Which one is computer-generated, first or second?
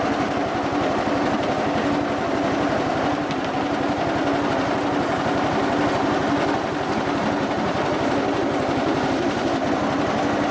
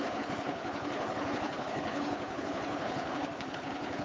second